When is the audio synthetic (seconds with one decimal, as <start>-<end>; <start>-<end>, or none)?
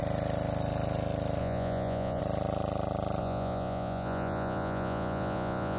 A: 1.4-2.2; 3.2-5.8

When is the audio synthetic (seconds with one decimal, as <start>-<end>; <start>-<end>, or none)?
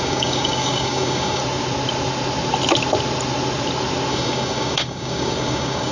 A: 0.0-1.4; 4.1-5.9